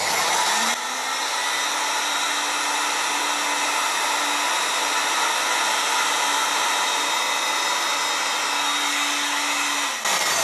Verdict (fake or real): real